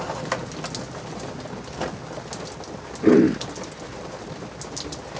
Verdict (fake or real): real